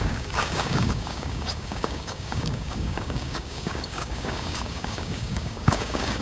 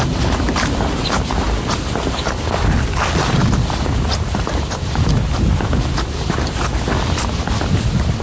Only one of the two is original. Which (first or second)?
second